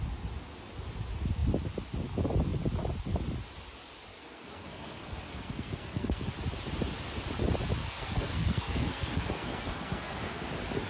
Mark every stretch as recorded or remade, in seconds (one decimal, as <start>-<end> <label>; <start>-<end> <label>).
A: 0.0-4.1 recorded; 4.1-6.3 remade; 6.3-7.8 recorded; 7.8-10.5 remade; 10.5-10.9 recorded